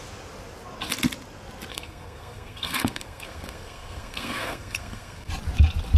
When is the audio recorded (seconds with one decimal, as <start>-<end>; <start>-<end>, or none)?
0.0-1.7; 5.3-6.0